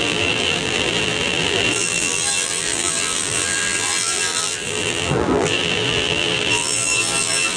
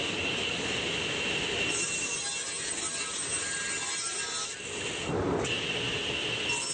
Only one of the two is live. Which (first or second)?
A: second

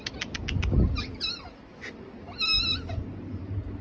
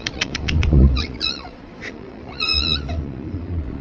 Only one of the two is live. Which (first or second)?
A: first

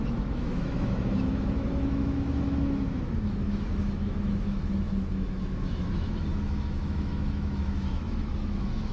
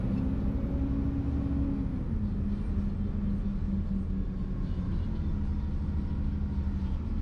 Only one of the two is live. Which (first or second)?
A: second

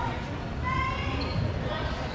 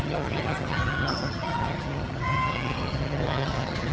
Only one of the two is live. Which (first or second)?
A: first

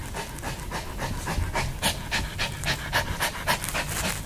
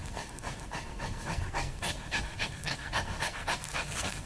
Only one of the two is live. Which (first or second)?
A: first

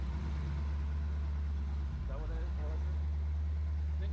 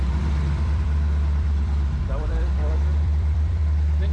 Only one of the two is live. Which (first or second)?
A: first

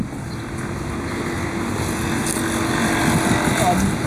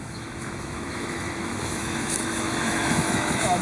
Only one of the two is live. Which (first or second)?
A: first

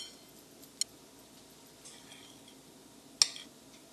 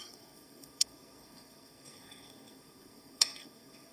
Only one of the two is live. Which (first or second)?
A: first